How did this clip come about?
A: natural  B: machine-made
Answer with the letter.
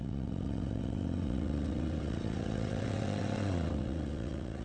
B